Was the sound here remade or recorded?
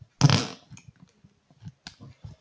recorded